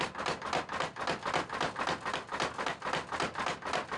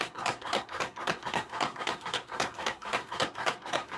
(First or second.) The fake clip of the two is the second